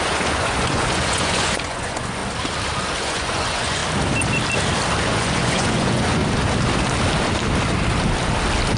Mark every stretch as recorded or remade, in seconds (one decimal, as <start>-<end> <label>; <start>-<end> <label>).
0.0-2.2 remade; 2.2-3.0 recorded; 3.0-3.8 remade; 3.8-5.0 recorded; 5.0-6.2 remade; 6.2-8.8 recorded